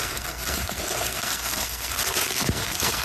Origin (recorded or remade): remade